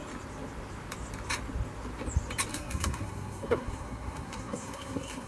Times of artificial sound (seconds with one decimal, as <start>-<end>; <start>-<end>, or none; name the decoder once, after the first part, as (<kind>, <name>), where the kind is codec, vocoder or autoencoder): 2.5-5.3 (codec, SNAC)